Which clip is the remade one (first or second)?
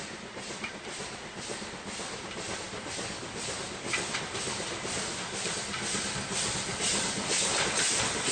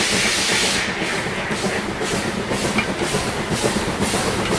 first